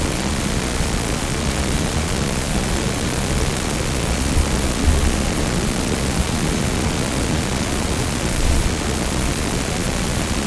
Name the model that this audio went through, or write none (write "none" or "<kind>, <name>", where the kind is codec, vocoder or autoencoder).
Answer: vocoder, Vocos